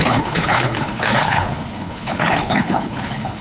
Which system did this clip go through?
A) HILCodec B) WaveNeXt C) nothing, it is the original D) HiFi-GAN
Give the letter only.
A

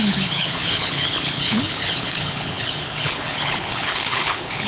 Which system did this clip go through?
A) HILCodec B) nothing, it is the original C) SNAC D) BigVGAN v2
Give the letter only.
A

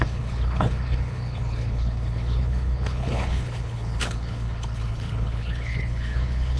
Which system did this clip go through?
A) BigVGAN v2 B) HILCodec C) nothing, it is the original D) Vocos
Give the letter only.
B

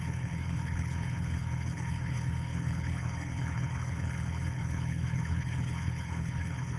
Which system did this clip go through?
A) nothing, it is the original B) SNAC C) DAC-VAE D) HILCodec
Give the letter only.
D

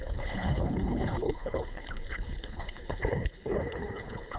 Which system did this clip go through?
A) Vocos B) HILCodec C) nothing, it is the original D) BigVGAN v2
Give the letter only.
B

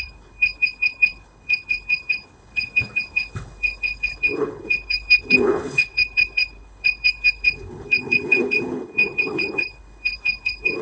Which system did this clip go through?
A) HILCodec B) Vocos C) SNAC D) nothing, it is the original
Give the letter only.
A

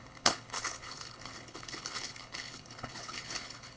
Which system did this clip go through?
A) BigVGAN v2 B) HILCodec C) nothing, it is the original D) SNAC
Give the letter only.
B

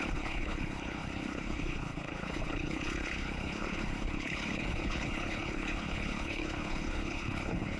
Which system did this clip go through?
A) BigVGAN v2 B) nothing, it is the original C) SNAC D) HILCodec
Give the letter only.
D